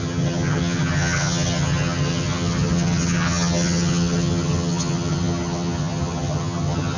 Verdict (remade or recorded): remade